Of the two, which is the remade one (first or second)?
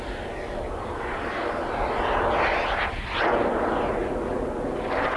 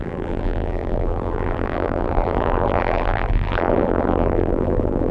second